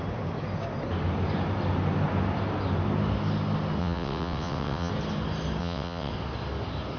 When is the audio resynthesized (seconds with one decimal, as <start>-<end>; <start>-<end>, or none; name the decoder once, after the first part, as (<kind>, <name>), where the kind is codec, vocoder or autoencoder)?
3.8-4.9 (vocoder, WaveNeXt); 5.6-6.1